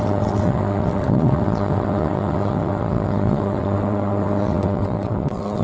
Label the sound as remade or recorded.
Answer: remade